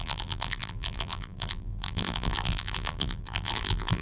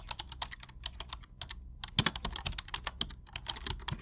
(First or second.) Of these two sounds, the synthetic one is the first